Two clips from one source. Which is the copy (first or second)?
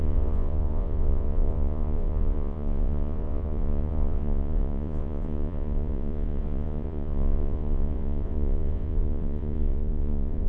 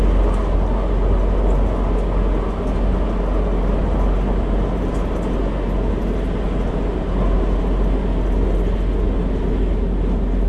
first